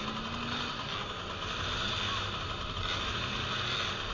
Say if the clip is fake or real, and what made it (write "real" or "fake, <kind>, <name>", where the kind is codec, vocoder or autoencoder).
real